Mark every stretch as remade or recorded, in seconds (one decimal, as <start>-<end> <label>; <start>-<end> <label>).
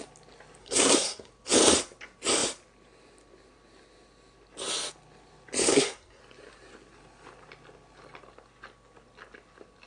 0.0-0.6 recorded; 0.6-1.3 remade; 1.3-5.6 recorded; 5.6-6.2 remade; 6.2-9.9 recorded